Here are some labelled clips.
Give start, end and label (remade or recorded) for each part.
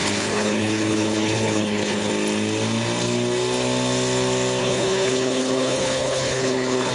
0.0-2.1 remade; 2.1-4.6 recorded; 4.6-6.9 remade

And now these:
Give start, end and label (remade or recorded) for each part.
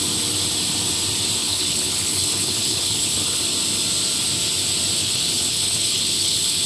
0.0-1.4 recorded; 1.4-3.4 remade; 3.4-5.0 recorded; 5.0-6.7 remade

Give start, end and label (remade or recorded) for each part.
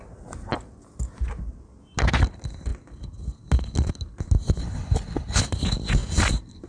0.0-4.6 recorded; 4.6-5.4 remade; 5.4-6.7 recorded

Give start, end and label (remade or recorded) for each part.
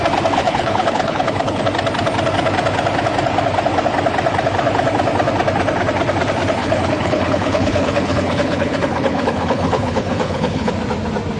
0.0-0.4 recorded; 0.4-1.6 remade; 1.6-6.6 recorded; 6.6-10.7 remade; 10.7-11.4 recorded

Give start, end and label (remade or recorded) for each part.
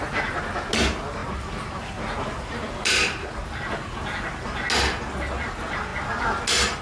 0.0-6.8 recorded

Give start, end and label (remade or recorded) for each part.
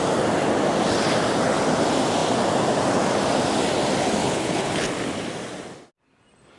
0.0-4.2 recorded; 4.2-4.8 remade; 4.8-6.6 recorded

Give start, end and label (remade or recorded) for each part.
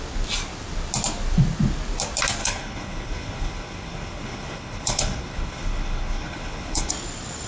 0.0-2.4 recorded; 2.4-6.9 remade; 6.9-7.5 recorded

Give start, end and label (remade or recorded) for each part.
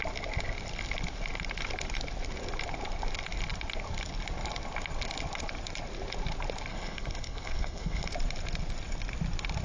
0.0-6.7 recorded; 6.7-8.1 remade; 8.1-9.6 recorded